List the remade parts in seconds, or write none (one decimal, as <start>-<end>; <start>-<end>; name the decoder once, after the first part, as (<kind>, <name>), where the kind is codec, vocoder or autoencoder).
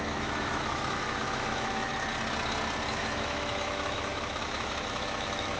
0.0-1.9 (autoencoder, DAC-VAE); 2.9-5.6